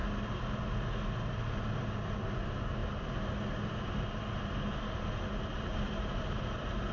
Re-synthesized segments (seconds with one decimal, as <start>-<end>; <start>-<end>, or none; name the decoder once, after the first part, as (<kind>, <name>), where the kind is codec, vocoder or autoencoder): none